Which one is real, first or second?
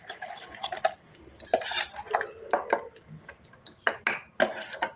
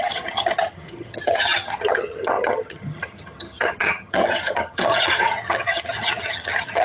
first